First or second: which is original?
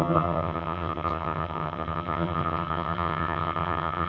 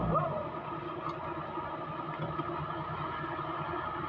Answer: second